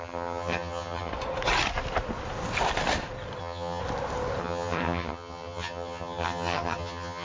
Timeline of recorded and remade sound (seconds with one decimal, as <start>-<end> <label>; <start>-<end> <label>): 0.0-1.1 remade; 1.1-3.4 recorded; 3.4-3.8 remade; 3.8-4.4 recorded; 4.4-7.2 remade